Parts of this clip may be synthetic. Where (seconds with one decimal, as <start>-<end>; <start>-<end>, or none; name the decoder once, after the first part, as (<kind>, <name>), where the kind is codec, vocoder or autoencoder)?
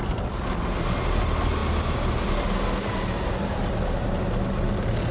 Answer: none